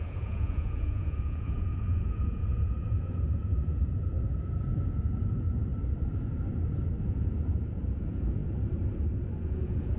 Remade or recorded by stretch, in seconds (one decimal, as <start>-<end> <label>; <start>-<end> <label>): 0.0-5.7 remade; 5.7-7.0 recorded; 7.0-8.4 remade; 8.4-9.4 recorded; 9.4-10.0 remade